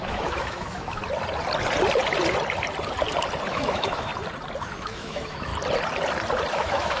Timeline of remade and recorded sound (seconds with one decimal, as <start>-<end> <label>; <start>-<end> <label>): 0.0-1.0 remade; 1.0-3.5 recorded; 3.5-4.1 remade; 4.1-4.6 recorded; 4.6-5.5 remade; 5.5-6.5 recorded; 6.5-7.0 remade